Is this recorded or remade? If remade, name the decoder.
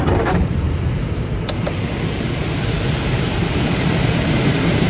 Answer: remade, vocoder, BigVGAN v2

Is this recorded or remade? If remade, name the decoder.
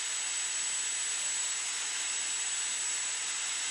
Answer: recorded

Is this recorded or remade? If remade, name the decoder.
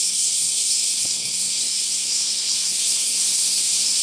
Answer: remade, codec, SNAC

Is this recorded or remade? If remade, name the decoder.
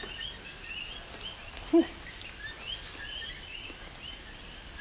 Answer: recorded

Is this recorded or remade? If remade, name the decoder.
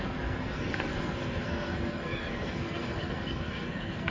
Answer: remade, codec, SNAC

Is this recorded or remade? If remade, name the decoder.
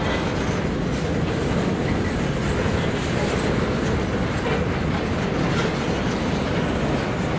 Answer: recorded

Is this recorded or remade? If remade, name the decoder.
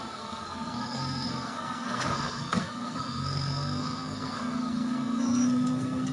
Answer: remade, codec, SNAC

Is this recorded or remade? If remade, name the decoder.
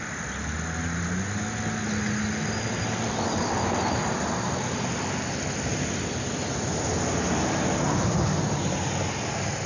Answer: recorded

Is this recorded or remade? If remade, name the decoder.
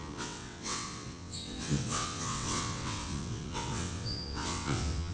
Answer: remade, vocoder, WaveNeXt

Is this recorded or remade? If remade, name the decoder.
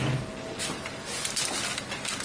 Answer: recorded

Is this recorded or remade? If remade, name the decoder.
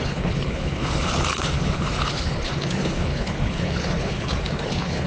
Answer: remade, codec, HILCodec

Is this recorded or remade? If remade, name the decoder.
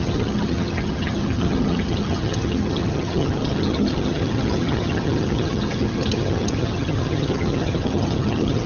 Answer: remade, vocoder, HiFi-GAN